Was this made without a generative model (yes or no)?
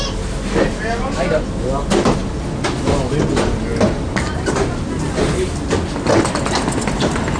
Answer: yes